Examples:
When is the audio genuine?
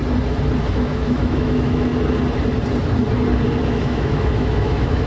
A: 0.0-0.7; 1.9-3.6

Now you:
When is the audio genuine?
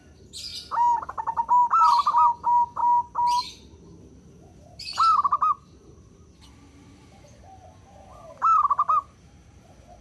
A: 0.0-10.0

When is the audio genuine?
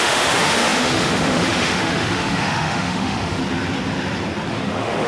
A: 3.4-4.5